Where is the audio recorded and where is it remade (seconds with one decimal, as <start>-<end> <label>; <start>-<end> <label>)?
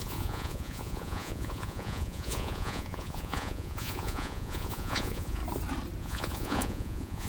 0.0-5.4 remade; 5.4-6.0 recorded; 6.0-7.3 remade